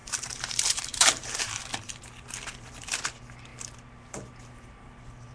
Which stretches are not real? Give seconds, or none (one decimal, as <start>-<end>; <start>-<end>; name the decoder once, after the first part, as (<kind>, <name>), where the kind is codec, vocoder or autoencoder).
0.0-1.6 (vocoder, BigVGAN v2)